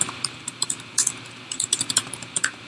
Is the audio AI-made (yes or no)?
yes